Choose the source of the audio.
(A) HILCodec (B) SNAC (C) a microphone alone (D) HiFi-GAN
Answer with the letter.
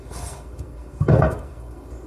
B